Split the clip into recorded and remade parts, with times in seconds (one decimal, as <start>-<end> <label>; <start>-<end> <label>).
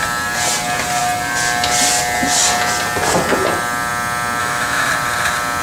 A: 0.0-4.4 recorded; 4.4-4.9 remade; 4.9-5.6 recorded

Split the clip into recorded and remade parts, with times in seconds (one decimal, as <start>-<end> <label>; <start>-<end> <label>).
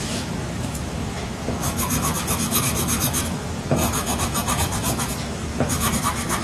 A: 0.0-6.4 remade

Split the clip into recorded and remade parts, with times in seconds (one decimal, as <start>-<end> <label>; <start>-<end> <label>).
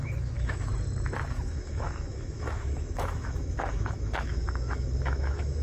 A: 0.0-0.7 remade; 0.7-1.3 recorded; 1.3-5.6 remade